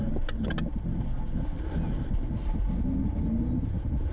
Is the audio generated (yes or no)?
no